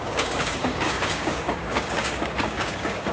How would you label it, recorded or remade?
remade